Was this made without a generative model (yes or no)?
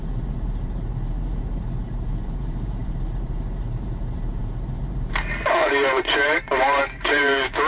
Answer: no